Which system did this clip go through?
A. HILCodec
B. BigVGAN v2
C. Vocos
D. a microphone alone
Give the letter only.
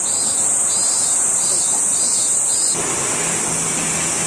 D